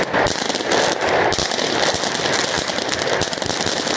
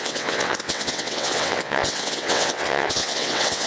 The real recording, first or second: first